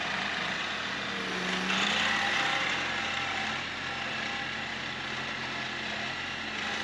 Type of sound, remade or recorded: recorded